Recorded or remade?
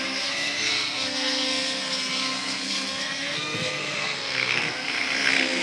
remade